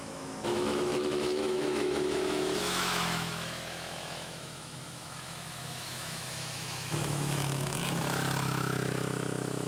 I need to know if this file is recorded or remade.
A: remade